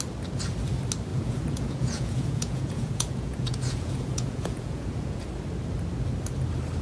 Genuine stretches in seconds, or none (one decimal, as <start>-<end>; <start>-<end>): 0.0-1.1; 5.2-6.8